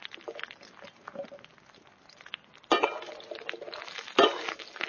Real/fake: real